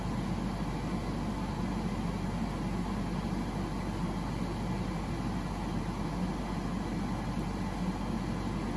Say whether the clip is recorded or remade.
recorded